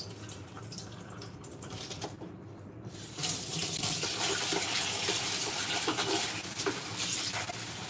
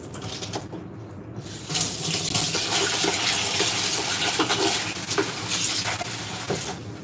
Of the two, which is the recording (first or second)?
second